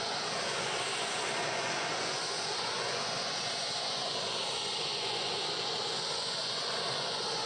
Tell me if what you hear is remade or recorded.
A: remade